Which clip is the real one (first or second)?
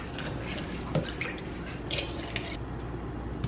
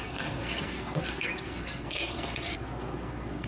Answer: first